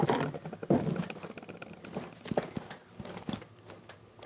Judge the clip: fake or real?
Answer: real